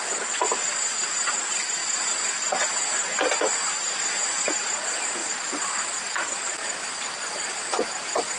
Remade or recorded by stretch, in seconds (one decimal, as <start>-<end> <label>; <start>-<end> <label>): 0.0-5.2 recorded; 5.2-5.8 remade; 5.8-6.6 recorded; 6.6-7.6 remade; 7.6-8.4 recorded